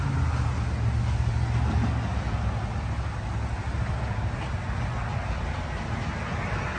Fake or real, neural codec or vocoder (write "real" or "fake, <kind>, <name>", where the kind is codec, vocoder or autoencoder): real